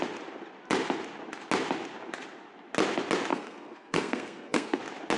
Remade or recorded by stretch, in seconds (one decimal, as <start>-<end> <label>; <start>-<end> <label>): 0.0-3.3 recorded; 3.3-4.8 remade; 4.8-5.2 recorded